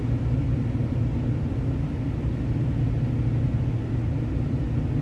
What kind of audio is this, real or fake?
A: real